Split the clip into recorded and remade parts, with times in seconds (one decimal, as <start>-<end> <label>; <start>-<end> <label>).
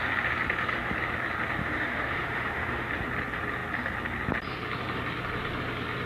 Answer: 0.0-1.6 recorded; 1.6-2.9 remade; 2.9-6.1 recorded